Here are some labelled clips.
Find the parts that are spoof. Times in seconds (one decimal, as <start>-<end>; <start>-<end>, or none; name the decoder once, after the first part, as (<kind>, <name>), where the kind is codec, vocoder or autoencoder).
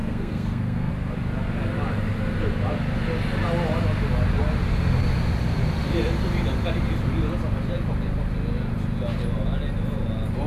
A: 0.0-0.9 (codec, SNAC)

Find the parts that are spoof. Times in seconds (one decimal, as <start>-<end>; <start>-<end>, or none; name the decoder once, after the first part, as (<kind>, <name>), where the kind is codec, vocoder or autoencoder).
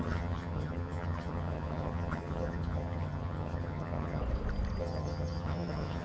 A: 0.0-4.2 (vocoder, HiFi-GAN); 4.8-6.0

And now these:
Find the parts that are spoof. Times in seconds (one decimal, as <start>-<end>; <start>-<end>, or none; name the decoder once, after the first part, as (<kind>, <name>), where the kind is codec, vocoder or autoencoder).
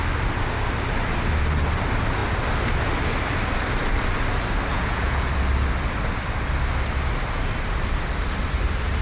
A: 4.7-5.3 (vocoder, Vocos)